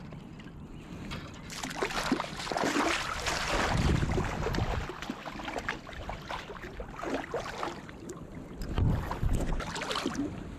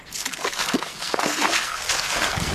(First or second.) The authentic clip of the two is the first